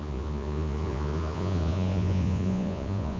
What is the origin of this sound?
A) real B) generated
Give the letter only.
B